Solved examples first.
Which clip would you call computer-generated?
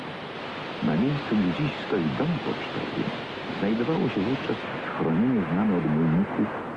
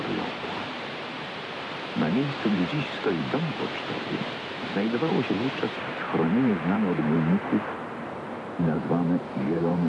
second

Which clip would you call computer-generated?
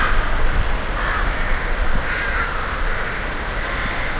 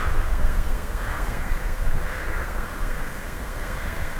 second